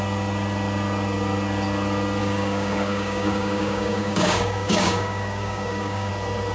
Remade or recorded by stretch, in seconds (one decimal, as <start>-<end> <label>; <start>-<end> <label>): 0.0-2.2 recorded; 2.2-6.1 remade; 6.1-6.5 recorded